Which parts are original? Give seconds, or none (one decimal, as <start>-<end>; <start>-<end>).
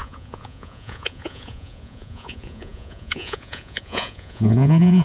none